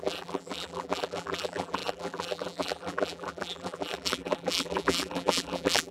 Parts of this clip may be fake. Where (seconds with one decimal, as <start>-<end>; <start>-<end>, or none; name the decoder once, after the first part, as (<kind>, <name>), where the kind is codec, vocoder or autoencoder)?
0.0-5.9 (vocoder, BigVGAN v2)